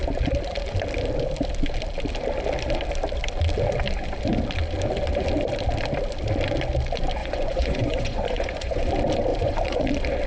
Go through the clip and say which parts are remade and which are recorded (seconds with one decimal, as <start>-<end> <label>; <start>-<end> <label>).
0.0-7.2 recorded; 7.2-8.9 remade; 8.9-9.3 recorded; 9.3-9.9 remade; 9.9-10.3 recorded